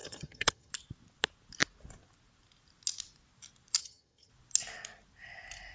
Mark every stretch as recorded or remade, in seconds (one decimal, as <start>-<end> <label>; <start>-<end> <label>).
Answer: 0.0-0.7 remade; 0.7-3.8 recorded; 3.8-4.3 remade; 4.3-5.7 recorded